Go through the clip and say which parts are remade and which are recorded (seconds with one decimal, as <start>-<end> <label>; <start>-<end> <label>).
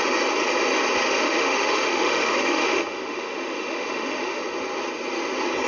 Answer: 0.0-1.0 recorded; 1.0-4.4 remade; 4.4-5.7 recorded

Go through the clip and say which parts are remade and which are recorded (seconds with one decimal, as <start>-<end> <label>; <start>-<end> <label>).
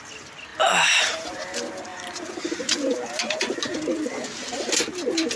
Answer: 0.0-5.4 recorded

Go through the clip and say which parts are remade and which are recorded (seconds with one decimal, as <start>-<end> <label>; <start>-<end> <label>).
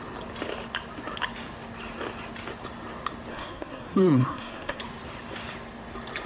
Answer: 0.0-3.3 recorded; 3.3-4.8 remade; 4.8-6.3 recorded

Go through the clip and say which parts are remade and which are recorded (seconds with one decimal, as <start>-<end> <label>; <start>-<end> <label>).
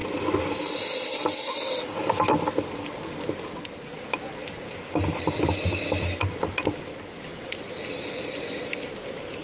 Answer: 0.0-7.3 recorded; 7.3-8.4 remade; 8.4-9.4 recorded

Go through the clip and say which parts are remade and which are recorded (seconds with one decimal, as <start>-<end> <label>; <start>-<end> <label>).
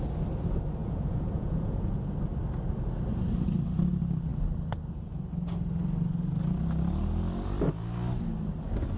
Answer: 0.0-0.8 recorded; 0.8-1.9 remade; 1.9-9.0 recorded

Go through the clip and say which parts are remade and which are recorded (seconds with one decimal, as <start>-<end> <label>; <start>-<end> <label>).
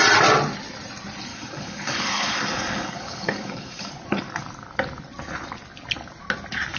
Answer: 0.0-1.3 recorded; 1.3-3.9 remade; 3.9-6.8 recorded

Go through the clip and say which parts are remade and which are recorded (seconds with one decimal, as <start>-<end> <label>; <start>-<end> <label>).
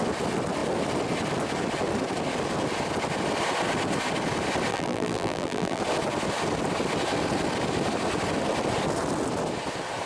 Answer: 0.0-4.7 recorded; 4.7-5.8 remade; 5.8-10.1 recorded